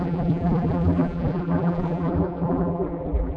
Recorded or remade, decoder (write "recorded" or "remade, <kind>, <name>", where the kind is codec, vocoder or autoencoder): remade, vocoder, BigVGAN v2